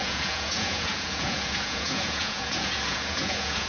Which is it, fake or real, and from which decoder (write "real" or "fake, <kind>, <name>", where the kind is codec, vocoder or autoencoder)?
fake, vocoder, Vocos